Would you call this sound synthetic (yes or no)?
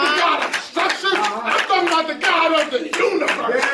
yes